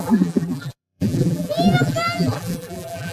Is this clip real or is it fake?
fake